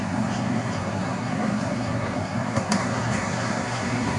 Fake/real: fake